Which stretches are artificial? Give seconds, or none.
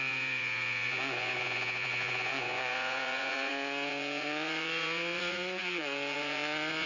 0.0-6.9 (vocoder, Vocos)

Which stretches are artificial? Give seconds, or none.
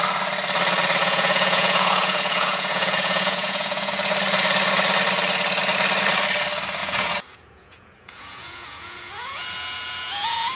1.0-3.9 (vocoder, Vocos); 6.8-10.5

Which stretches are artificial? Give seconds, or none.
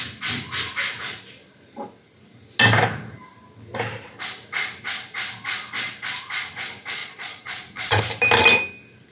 7.0-8.0 (vocoder, Vocos)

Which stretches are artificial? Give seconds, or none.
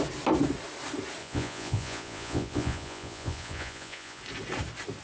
1.2-4.2 (vocoder, Vocos)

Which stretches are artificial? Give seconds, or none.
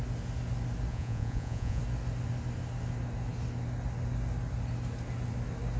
0.9-1.8 (vocoder, Vocos)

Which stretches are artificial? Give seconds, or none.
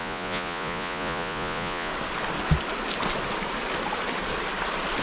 0.0-1.9 (vocoder, Vocos)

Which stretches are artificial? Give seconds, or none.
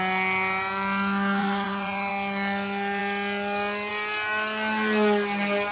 1.4-2.1 (vocoder, Vocos)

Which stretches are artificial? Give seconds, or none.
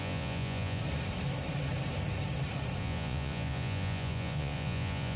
0.0-0.8 (vocoder, Vocos); 2.8-5.2